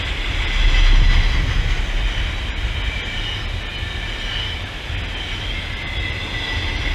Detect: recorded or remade recorded